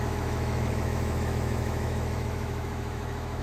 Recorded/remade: remade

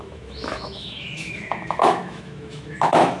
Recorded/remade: remade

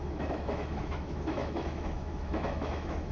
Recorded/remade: remade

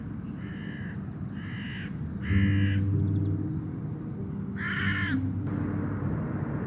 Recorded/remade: recorded